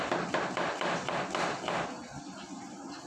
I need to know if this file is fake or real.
real